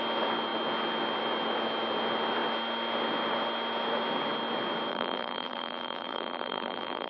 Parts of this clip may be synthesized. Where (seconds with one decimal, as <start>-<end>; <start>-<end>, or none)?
4.9-7.1